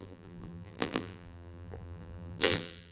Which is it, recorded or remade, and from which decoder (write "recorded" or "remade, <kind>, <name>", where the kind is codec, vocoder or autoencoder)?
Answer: remade, vocoder, BigVGAN v2